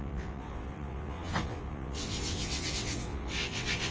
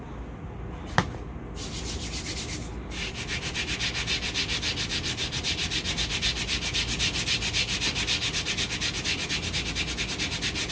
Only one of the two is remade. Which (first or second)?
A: first